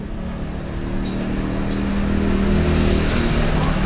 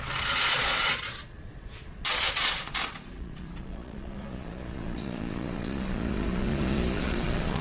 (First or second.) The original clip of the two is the first